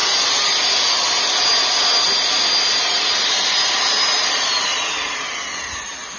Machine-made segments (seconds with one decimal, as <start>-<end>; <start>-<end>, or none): none